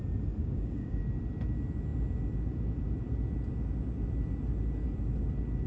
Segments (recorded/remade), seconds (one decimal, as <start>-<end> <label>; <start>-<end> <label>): 0.0-0.4 recorded; 0.4-1.0 remade; 1.0-5.7 recorded